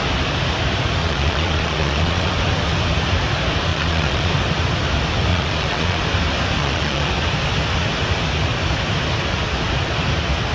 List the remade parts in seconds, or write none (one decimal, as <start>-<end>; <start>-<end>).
1.0-2.3; 3.7-4.3; 5.3-6.0; 6.6-7.1